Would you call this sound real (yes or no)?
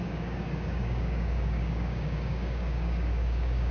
no